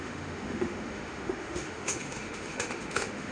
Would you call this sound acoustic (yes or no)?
no